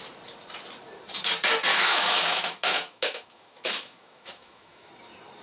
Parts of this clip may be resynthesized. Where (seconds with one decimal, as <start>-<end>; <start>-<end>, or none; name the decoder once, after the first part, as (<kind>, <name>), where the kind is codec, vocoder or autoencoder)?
1.7-4.9 (autoencoder, DAC-VAE)